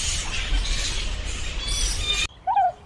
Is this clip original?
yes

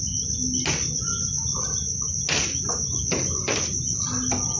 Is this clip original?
yes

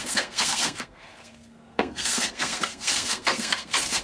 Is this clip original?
no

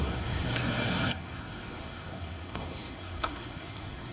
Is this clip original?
no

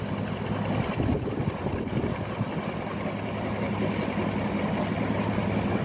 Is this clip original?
yes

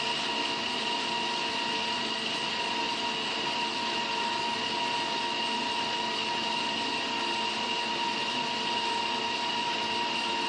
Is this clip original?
yes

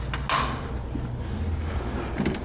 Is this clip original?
yes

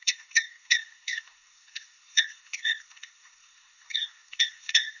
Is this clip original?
no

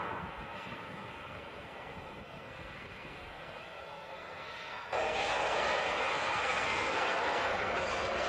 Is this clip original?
no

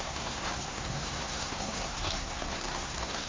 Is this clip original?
no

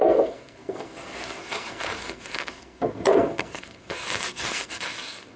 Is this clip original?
no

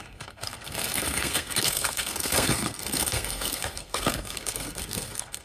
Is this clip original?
no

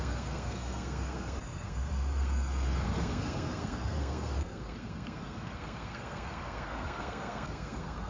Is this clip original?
no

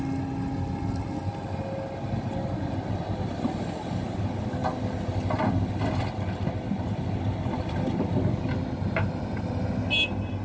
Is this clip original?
yes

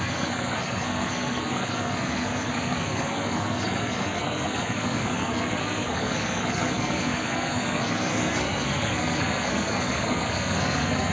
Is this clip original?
no